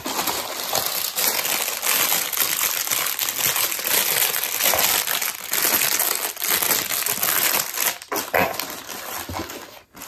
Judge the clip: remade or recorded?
recorded